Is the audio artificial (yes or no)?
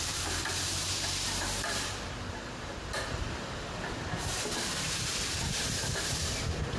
yes